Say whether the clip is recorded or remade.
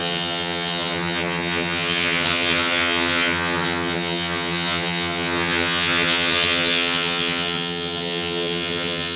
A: remade